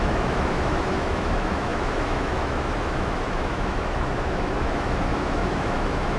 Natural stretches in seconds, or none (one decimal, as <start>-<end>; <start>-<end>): none